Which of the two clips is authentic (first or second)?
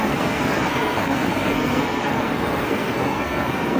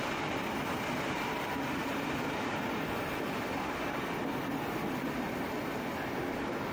second